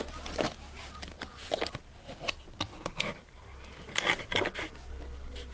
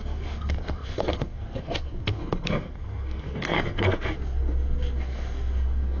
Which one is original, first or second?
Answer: first